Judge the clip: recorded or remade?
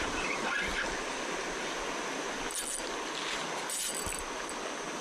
recorded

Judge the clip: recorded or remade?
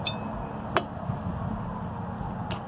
recorded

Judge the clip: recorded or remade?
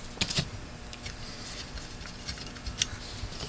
recorded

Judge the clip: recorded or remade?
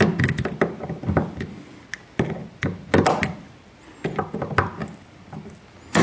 recorded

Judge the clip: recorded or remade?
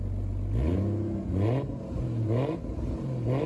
recorded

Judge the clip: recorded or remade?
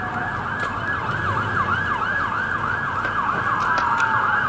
recorded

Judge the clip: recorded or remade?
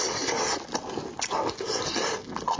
recorded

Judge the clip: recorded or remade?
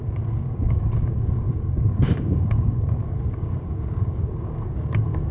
remade